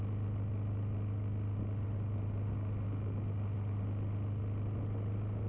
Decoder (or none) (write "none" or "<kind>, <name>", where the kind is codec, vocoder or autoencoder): none